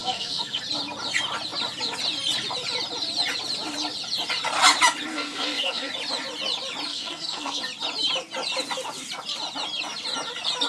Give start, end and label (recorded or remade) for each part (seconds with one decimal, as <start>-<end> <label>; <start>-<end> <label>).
0.0-0.6 remade; 0.6-5.1 recorded; 5.1-5.9 remade; 5.9-6.9 recorded; 6.9-7.6 remade; 7.6-10.7 recorded